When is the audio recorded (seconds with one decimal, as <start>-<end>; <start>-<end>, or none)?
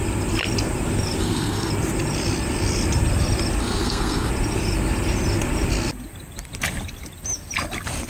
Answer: 0.0-1.2; 1.7-3.6; 4.3-8.1